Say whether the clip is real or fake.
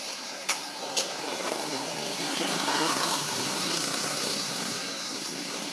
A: fake